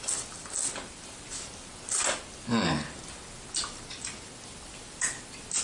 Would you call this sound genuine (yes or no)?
yes